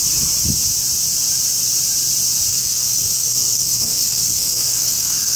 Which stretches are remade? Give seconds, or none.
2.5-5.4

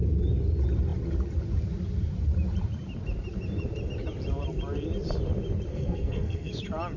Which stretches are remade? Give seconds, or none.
5.7-6.5

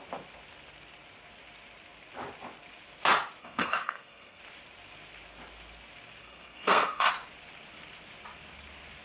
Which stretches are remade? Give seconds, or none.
3.4-4.4; 6.2-7.1

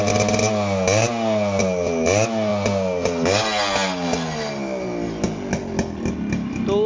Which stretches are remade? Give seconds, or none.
none

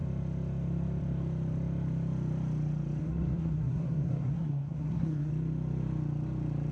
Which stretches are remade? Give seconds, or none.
3.0-5.3

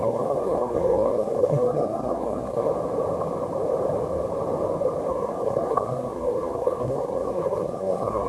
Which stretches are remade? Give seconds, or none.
0.0-2.7; 5.1-8.3

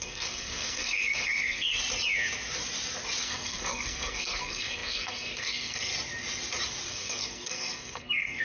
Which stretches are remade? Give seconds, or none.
0.0-1.8; 3.2-5.9; 6.9-8.4

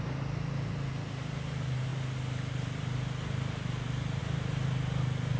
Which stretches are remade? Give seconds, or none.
none